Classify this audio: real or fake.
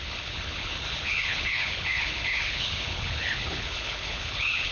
fake